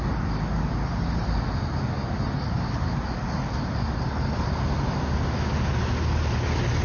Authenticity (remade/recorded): recorded